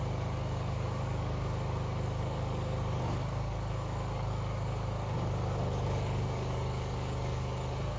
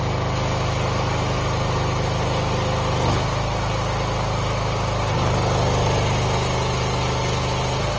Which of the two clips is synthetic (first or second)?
first